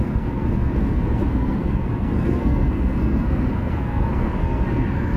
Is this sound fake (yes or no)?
yes